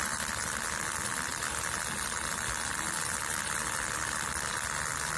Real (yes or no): yes